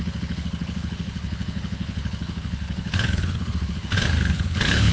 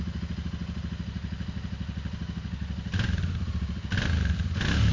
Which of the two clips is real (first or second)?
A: second